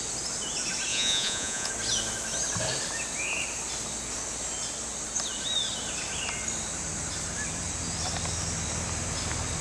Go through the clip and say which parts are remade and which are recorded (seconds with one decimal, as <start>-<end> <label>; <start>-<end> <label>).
0.0-0.9 recorded; 0.9-1.7 remade; 1.7-9.6 recorded